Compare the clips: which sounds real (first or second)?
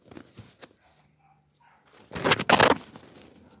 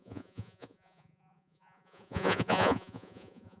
first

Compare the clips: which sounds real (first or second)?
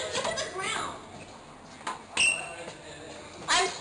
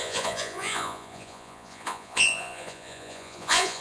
first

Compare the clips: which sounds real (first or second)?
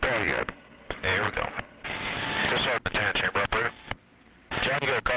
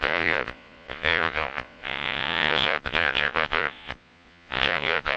first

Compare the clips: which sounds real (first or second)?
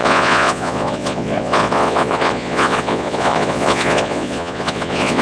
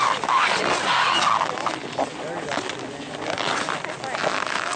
second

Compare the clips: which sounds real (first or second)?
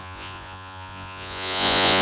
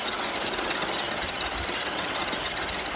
second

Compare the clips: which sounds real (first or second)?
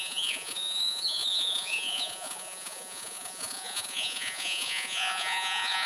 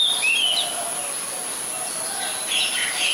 second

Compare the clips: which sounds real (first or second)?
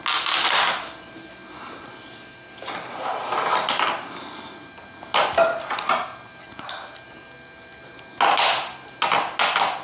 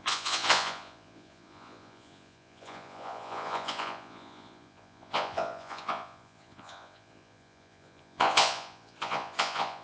first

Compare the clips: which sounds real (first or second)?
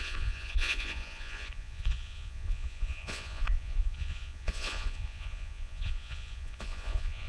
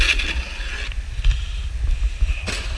second